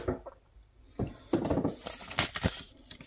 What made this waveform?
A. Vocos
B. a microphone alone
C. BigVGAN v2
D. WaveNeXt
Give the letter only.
C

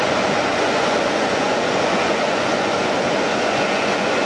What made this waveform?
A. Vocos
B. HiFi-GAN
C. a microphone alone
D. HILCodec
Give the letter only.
A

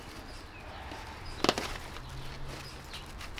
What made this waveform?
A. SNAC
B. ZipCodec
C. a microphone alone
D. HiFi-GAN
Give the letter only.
C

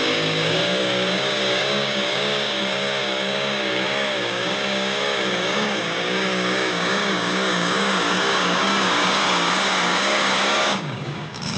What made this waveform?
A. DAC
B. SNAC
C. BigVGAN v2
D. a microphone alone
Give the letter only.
A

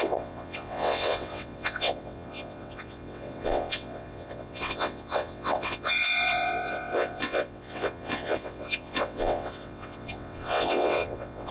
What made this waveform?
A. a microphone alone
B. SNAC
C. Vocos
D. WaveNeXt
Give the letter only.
D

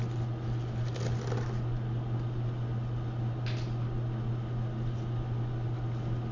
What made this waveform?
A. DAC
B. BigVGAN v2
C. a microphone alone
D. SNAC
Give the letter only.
C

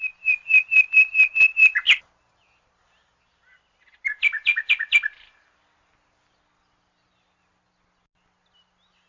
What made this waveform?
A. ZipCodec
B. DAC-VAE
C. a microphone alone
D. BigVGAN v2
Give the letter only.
C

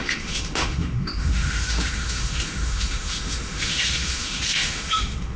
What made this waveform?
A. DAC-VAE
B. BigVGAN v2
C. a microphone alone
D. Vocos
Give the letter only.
A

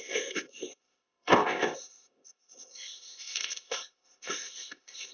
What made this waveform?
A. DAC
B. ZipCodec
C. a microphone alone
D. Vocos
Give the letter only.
B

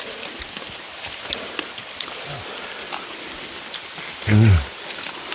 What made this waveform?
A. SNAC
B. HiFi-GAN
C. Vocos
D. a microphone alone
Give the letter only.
D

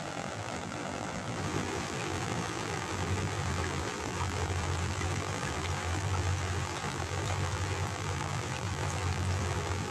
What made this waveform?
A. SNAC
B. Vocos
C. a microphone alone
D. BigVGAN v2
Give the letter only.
D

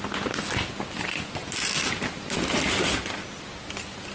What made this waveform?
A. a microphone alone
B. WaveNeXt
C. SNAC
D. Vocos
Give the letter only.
A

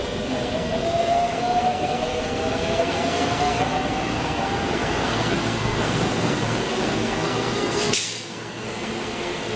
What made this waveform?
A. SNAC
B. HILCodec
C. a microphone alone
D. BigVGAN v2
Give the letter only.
A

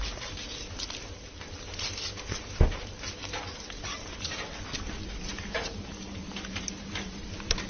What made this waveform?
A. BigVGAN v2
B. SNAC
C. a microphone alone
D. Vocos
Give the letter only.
C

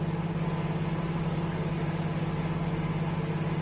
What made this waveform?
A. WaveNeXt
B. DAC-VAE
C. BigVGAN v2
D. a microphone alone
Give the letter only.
D